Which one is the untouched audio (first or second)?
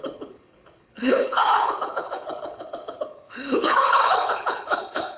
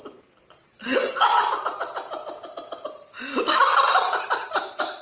second